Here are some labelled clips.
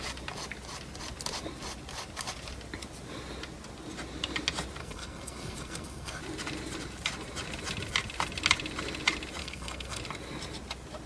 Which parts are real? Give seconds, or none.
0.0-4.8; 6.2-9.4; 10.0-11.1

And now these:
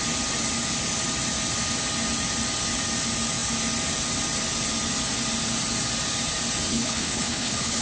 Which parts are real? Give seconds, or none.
0.0-6.7

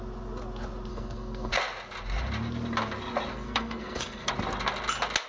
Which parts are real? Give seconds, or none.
0.0-0.9; 1.5-3.3; 4.3-5.3